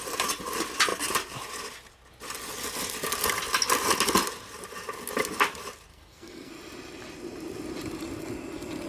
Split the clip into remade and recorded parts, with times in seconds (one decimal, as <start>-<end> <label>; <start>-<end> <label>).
0.0-5.9 recorded; 5.9-6.5 remade; 6.5-8.9 recorded